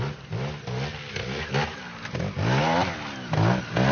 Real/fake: real